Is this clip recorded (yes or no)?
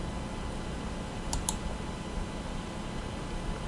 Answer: yes